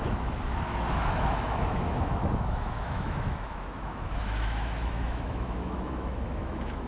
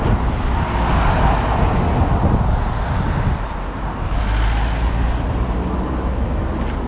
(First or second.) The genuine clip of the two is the second